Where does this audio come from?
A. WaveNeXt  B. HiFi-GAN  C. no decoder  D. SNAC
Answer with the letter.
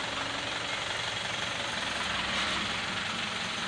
C